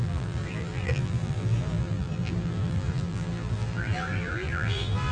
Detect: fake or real fake